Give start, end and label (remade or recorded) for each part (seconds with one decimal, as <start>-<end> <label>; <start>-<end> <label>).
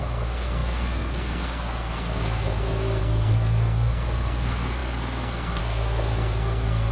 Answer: 0.0-6.9 remade